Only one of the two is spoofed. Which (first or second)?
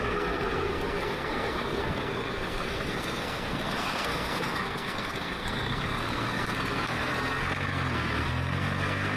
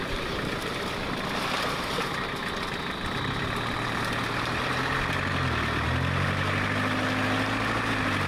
first